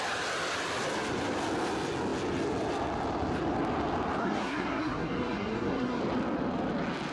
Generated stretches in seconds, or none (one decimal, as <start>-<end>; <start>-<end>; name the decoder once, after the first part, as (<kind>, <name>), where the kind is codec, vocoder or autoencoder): 4.2-6.0 (codec, SNAC)